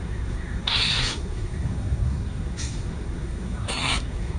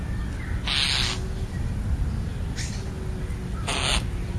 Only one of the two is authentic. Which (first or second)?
second